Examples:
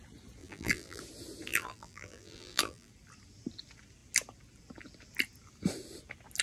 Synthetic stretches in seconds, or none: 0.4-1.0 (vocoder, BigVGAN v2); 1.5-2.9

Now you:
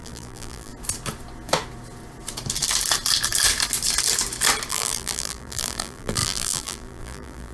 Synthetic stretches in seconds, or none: 0.0-0.7 (vocoder, BigVGAN v2); 4.7-7.5

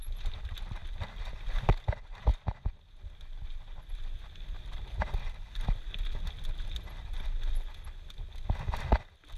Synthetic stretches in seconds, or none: none

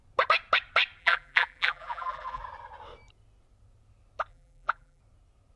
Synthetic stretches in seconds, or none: 1.0-2.4 (vocoder, BigVGAN v2); 4.3-5.0

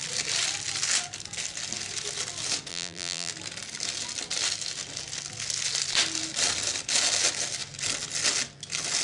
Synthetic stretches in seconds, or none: 2.7-3.3 (vocoder, BigVGAN v2)